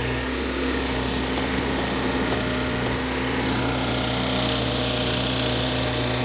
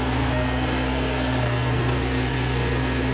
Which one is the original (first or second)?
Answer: first